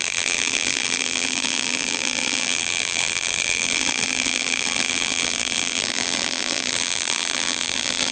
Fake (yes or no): yes